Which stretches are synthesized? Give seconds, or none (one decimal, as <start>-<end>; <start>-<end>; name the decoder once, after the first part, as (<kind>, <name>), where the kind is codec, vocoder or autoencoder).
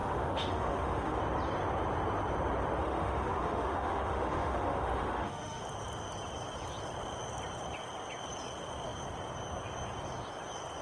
0.0-1.2 (autoencoder, DAC-VAE); 2.8-5.6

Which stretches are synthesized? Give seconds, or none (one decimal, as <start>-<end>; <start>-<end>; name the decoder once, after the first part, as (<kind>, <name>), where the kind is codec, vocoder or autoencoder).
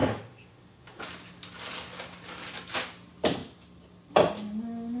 0.0-1.0 (autoencoder, DAC-VAE)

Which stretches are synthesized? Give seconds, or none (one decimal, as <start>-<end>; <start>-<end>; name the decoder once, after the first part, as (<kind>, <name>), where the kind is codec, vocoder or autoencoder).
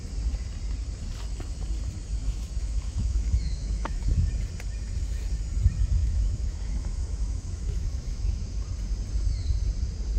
2.2-4.3 (autoencoder, DAC-VAE); 6.0-8.5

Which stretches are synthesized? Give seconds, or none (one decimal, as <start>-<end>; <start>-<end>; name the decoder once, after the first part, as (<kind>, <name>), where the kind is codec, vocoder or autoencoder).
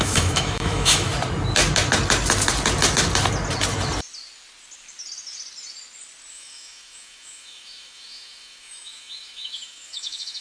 0.0-1.1 (autoencoder, DAC-VAE); 6.3-10.4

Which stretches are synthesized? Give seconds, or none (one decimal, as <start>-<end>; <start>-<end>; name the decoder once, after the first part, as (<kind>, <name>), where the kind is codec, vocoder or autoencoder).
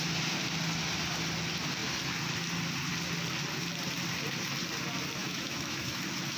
5.2-6.0 (autoencoder, DAC-VAE)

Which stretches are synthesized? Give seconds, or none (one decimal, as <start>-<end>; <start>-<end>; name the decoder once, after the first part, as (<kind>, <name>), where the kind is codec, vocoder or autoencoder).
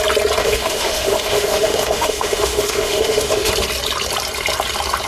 0.4-3.5 (autoencoder, DAC-VAE)